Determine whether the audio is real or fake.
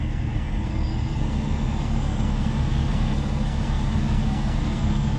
fake